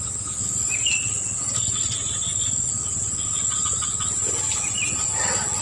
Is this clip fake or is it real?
real